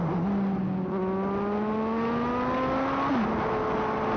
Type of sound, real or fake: real